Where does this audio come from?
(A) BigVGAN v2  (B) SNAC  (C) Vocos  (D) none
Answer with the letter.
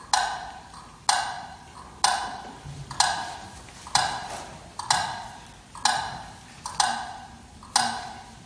D